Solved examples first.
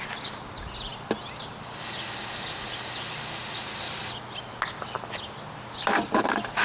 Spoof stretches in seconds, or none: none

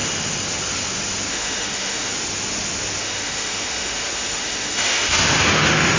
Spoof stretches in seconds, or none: 1.3-2.1 (autoencoder, DAC-VAE); 3.0-6.0

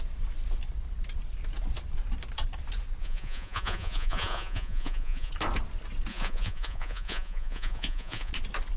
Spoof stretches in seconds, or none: 3.0-5.3 (vocoder, Vocos); 6.1-8.3

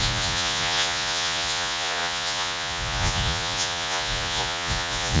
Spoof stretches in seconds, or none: 0.0-5.2 (vocoder, Vocos)